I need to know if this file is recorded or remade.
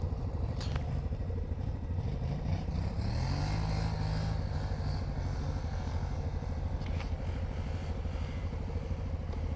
recorded